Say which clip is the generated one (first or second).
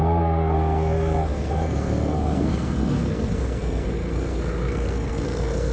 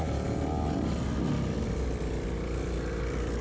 first